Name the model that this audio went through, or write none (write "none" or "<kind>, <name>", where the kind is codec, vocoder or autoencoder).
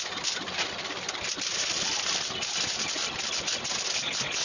none